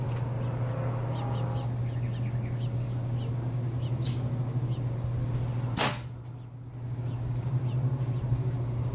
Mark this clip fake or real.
real